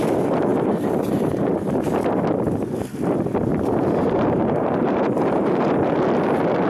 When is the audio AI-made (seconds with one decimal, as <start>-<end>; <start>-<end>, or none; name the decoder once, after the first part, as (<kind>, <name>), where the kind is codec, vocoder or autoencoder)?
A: 0.5-2.2 (vocoder, BigVGAN v2); 3.5-5.6